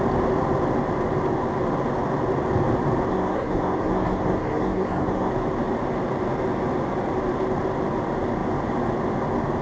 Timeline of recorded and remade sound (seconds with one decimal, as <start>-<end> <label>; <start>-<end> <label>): 0.0-3.1 recorded; 3.1-5.3 remade; 5.3-9.6 recorded